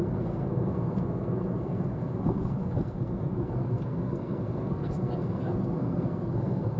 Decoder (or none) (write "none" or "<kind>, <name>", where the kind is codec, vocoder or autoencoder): codec, SNAC